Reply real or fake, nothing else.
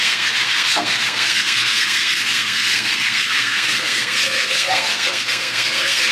fake